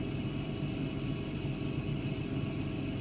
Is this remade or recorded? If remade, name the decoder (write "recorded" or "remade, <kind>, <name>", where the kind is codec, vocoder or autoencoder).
recorded